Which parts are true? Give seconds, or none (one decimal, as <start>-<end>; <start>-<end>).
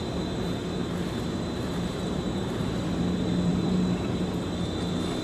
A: 0.0-0.8; 3.0-3.5; 4.4-5.2